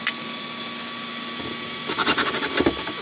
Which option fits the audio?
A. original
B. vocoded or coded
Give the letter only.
A